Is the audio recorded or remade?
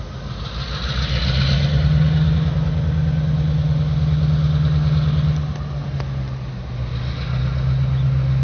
recorded